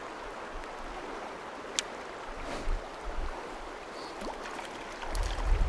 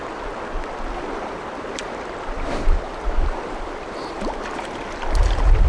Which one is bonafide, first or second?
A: first